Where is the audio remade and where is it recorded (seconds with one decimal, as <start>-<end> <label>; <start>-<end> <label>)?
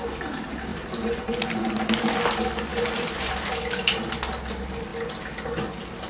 0.0-0.7 recorded; 0.7-1.4 remade; 1.4-2.7 recorded; 2.7-3.6 remade; 3.6-6.1 recorded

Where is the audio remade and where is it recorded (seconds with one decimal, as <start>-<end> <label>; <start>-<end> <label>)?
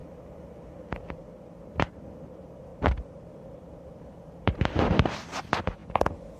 0.0-1.1 recorded; 1.1-5.8 remade; 5.8-6.4 recorded